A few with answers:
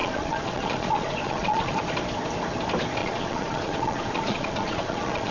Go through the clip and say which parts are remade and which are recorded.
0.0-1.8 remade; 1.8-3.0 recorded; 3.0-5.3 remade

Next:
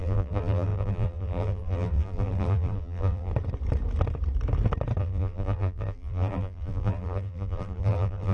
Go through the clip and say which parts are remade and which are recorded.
0.0-3.3 remade; 3.3-5.0 recorded; 5.0-8.3 remade